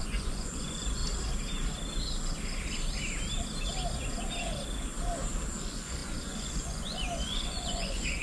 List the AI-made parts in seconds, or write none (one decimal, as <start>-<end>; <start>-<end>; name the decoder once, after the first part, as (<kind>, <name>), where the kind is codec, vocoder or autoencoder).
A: 0.0-1.0 (vocoder, Vocos); 5.6-8.2